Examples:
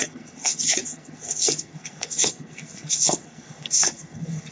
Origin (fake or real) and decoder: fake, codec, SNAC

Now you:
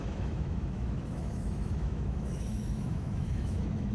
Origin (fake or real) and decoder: fake, autoencoder, DAC-VAE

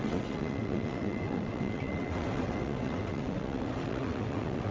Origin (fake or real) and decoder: fake, vocoder, WaveNeXt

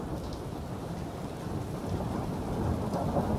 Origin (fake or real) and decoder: real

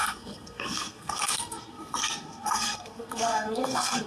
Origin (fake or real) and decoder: fake, codec, SNAC